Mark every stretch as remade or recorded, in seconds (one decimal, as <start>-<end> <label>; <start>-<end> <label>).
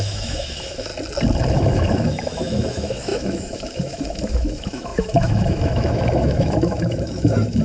0.0-0.9 remade; 0.9-1.5 recorded; 1.5-7.6 remade